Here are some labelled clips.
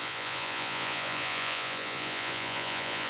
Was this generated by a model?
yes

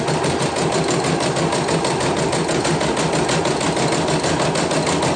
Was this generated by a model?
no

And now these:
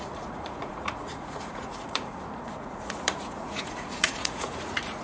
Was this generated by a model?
yes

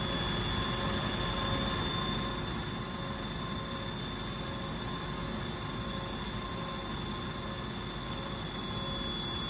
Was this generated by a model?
no